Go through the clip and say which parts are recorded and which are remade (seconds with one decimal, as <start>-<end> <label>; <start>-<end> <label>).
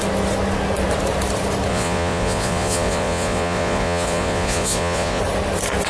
0.0-1.7 recorded; 1.7-5.2 remade; 5.2-5.9 recorded